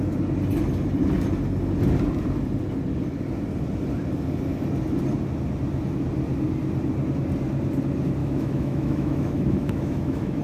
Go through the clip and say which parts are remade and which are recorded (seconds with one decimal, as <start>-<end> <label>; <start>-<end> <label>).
0.0-8.2 recorded; 8.2-10.4 remade